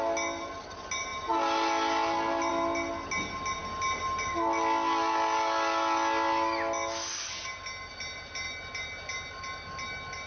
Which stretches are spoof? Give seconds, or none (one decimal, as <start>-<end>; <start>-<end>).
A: none